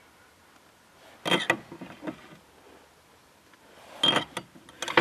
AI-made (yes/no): no